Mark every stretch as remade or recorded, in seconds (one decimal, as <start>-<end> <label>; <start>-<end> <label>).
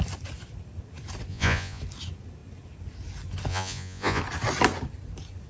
0.0-1.3 recorded; 1.3-1.8 remade; 1.8-3.5 recorded; 3.5-4.2 remade; 4.2-5.5 recorded